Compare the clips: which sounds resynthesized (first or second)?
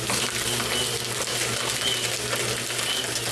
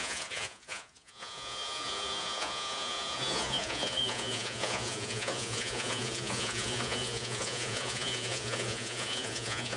second